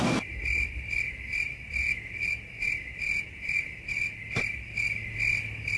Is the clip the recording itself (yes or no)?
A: yes